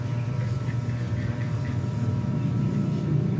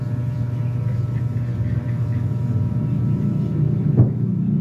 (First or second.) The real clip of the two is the second